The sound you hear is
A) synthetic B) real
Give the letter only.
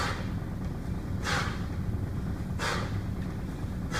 B